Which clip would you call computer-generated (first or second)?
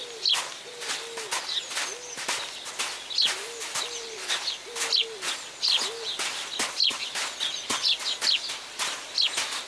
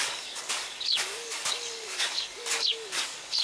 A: second